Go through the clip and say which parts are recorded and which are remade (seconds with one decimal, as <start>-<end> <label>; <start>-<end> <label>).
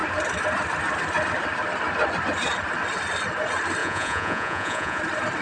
0.0-3.8 recorded; 3.8-5.0 remade; 5.0-5.4 recorded